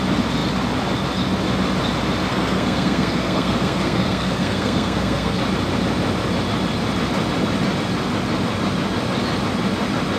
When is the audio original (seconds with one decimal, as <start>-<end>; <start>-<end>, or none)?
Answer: 0.0-2.3; 5.4-10.2